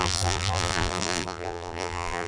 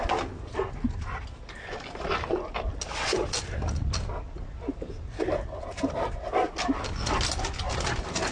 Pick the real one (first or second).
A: second